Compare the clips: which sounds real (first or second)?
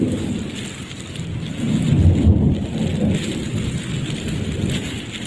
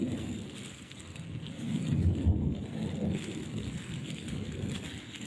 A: first